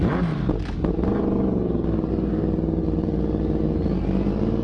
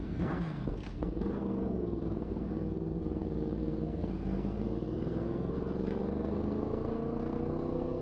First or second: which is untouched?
first